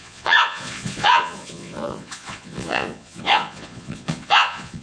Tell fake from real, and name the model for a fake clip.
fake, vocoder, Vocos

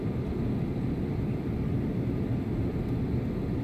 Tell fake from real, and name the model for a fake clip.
real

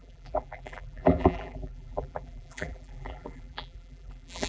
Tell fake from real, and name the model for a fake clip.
fake, vocoder, BigVGAN v2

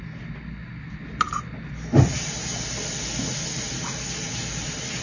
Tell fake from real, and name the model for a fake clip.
real